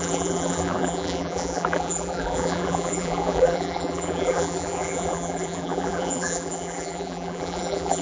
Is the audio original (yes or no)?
no